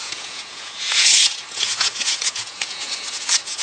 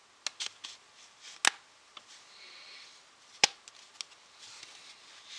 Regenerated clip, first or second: first